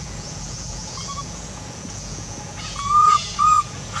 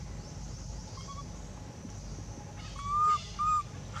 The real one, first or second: second